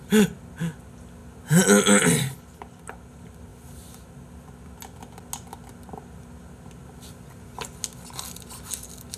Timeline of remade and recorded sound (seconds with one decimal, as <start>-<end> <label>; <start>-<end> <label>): 0.0-9.2 recorded